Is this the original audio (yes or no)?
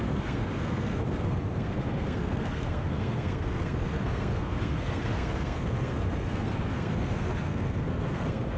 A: no